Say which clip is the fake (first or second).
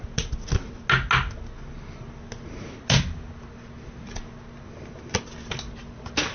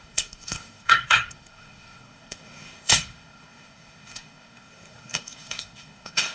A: second